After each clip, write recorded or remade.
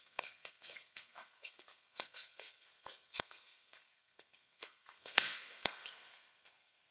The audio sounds remade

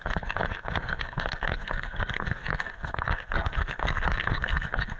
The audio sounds remade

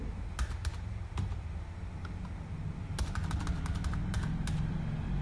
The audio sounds recorded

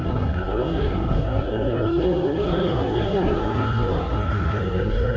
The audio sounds remade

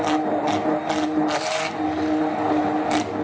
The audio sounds recorded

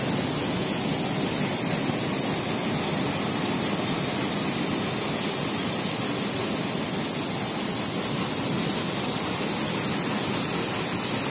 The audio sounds recorded